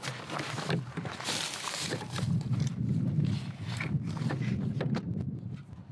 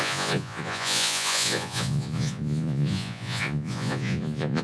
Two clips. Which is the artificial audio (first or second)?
second